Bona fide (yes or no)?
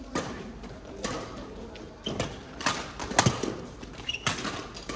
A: yes